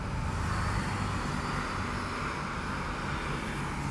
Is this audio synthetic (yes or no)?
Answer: no